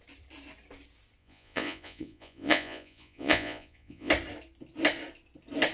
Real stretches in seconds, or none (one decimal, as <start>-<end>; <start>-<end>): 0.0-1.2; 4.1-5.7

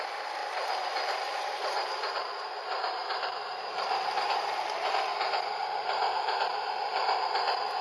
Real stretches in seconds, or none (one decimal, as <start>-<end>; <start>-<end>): 0.0-0.4; 4.9-5.6; 6.4-7.8

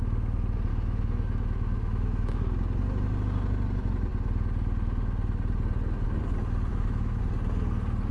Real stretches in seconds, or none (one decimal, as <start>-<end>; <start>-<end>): 0.0-0.7; 2.4-6.7; 7.2-8.1

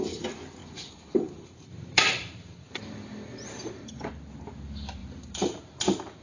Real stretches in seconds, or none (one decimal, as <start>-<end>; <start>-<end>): 0.0-0.6; 4.1-5.0; 5.6-6.2

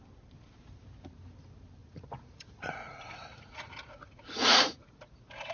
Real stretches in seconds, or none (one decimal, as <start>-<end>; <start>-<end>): 0.0-1.8; 5.1-5.5